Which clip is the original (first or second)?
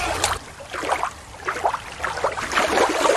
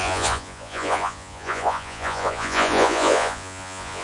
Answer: first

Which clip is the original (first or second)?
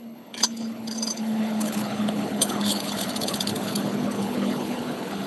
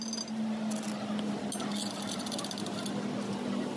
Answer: second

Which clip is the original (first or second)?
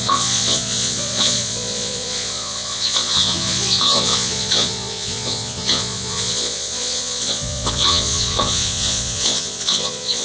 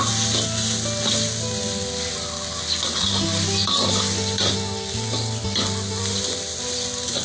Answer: second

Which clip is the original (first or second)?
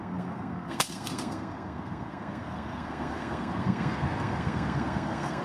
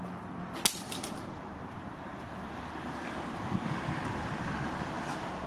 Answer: second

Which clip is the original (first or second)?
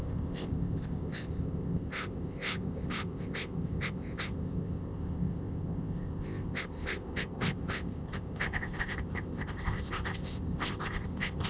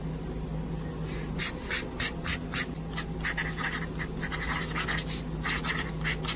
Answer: second